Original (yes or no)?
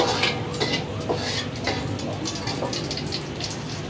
yes